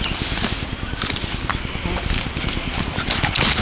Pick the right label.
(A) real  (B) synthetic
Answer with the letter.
A